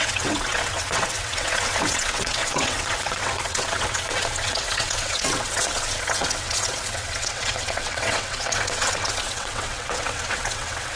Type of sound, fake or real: fake